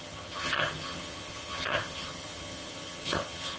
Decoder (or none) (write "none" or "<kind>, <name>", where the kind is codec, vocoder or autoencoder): vocoder, HiFi-GAN